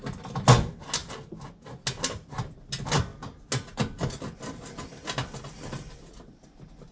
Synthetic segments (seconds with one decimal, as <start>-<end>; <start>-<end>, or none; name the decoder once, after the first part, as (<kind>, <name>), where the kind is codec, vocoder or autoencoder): none